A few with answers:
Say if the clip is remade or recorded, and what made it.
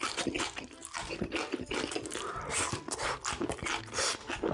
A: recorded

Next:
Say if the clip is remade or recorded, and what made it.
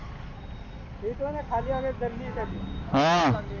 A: recorded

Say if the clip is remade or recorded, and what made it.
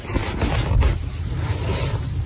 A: recorded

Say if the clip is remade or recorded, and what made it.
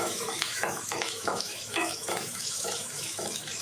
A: remade, autoencoder, DAC-VAE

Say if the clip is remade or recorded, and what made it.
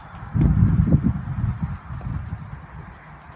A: recorded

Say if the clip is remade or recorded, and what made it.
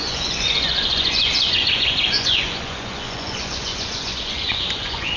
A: remade, vocoder, Vocos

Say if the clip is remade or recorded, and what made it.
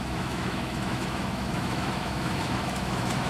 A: remade, autoencoder, DAC-VAE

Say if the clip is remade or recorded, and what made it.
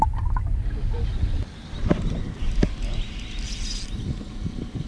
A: recorded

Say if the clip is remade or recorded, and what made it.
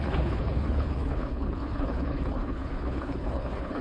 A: remade, codec, HILCodec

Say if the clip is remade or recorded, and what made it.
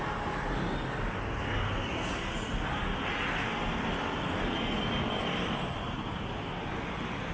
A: recorded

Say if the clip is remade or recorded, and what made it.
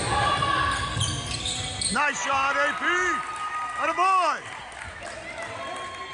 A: recorded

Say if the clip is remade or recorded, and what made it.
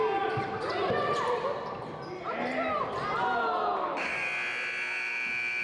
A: recorded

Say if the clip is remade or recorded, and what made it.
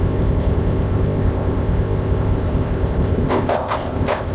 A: remade, codec, ZipCodec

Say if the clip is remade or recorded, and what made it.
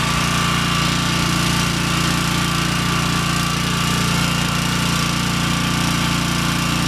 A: recorded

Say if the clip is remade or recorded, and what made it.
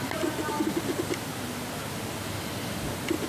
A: recorded